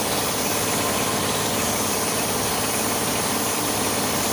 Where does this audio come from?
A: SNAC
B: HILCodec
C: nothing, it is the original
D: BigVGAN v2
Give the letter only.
C